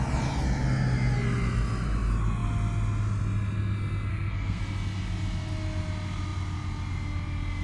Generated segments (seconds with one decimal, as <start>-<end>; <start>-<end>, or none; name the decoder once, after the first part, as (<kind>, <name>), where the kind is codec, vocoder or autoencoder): 4.1-4.6 (codec, SNAC)